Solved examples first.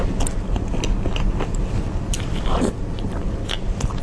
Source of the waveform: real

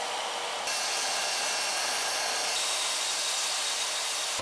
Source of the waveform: real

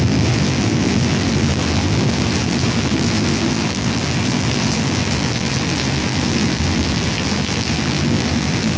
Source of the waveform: fake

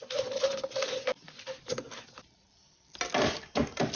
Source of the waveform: real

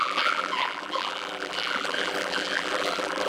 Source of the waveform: fake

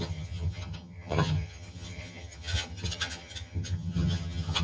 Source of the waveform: fake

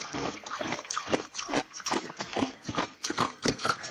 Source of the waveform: fake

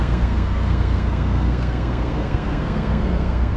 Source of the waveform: fake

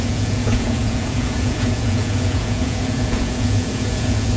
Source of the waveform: fake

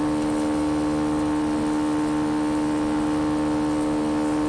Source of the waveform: real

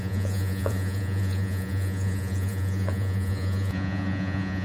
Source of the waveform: fake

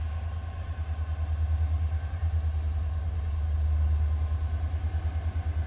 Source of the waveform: real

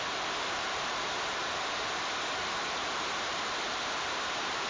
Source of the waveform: fake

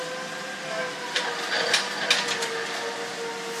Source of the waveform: real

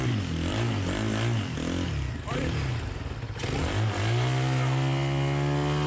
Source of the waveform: real